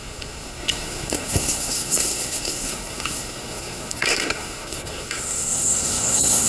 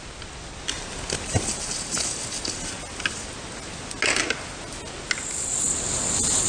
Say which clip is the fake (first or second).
first